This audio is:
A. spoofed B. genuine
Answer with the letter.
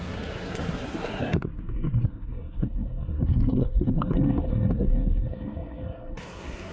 A